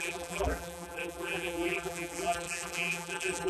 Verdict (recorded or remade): remade